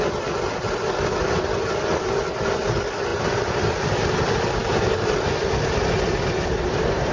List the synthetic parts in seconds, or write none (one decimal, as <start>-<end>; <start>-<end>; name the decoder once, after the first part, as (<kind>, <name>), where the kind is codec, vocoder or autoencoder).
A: none